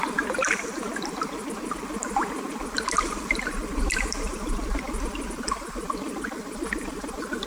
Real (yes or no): yes